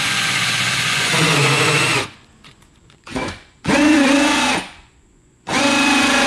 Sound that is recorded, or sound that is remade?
remade